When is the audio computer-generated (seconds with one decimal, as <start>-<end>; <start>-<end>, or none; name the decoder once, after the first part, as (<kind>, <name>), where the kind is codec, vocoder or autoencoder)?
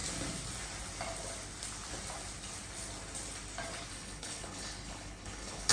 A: 3.9-5.7 (codec, HILCodec)